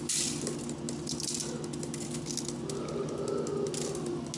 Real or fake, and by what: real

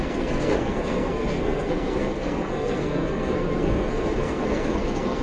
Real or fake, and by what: fake, codec, SNAC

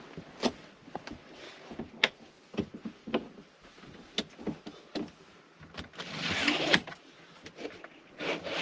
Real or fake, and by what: real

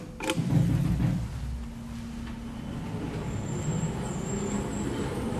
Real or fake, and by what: real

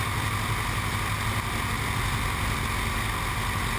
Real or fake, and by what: real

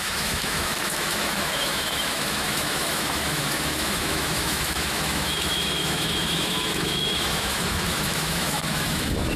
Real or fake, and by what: fake, autoencoder, DAC-VAE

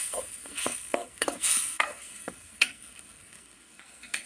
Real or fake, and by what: fake, codec, SNAC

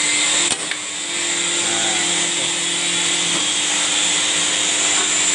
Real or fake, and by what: real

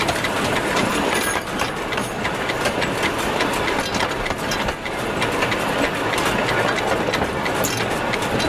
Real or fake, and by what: real